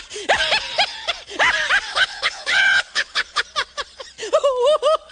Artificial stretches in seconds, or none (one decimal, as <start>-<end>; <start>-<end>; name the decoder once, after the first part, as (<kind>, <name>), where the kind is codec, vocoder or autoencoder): 1.9-3.4 (codec, HILCodec)